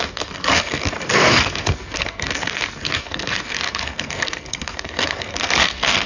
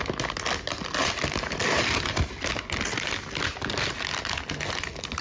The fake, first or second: first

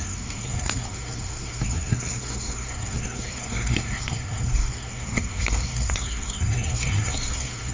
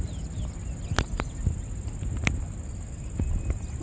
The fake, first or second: first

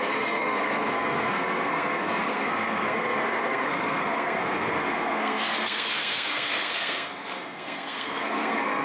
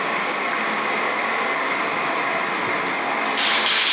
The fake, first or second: first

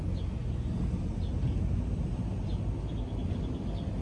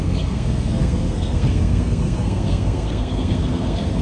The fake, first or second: second